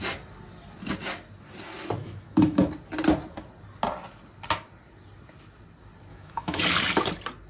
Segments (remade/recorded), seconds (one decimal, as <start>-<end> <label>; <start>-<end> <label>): 0.0-2.0 recorded; 2.0-2.7 remade; 2.7-6.1 recorded; 6.1-6.6 remade; 6.6-7.5 recorded